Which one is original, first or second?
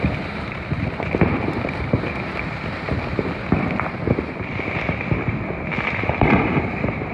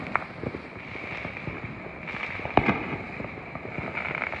second